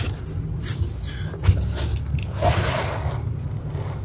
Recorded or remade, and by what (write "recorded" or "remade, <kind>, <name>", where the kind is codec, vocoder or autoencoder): recorded